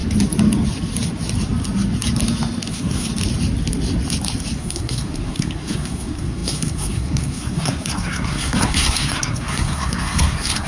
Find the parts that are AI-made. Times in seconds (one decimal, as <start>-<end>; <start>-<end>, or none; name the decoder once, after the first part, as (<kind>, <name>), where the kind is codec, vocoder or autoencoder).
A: 2.7-3.1 (codec, SNAC); 4.6-10.7